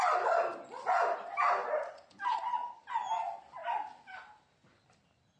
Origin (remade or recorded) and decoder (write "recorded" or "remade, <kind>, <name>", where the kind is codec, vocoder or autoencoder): recorded